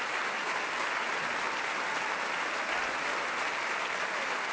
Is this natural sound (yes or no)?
yes